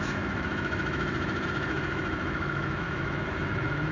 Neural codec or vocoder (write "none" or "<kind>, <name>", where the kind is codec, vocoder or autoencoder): autoencoder, DAC-VAE